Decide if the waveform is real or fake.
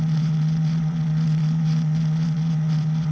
fake